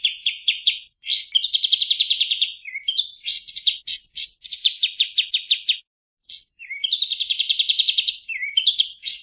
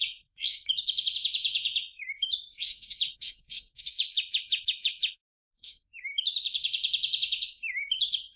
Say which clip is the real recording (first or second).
first